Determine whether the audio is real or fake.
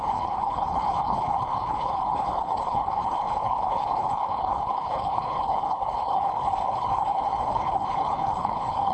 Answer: fake